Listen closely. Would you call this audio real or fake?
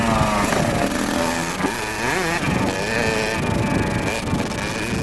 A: real